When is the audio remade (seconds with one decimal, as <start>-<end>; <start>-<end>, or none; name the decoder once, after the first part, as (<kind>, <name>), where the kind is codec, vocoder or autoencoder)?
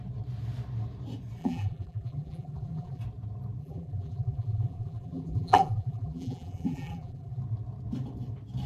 1.4-3.0 (vocoder, BigVGAN v2); 3.6-7.4